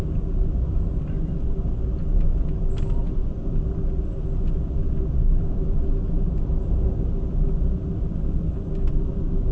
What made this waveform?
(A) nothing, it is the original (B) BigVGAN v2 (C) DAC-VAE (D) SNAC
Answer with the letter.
A